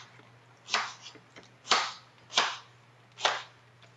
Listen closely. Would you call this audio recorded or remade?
recorded